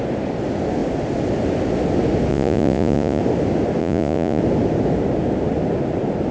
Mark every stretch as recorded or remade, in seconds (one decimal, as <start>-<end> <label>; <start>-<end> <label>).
0.0-2.3 recorded; 2.3-3.2 remade; 3.2-3.8 recorded; 3.8-4.4 remade; 4.4-6.3 recorded